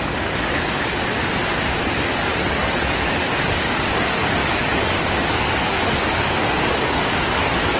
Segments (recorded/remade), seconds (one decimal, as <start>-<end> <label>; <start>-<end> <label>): 0.0-7.8 remade